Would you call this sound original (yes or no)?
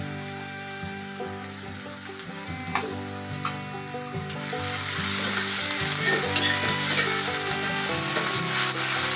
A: yes